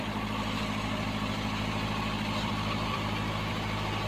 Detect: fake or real fake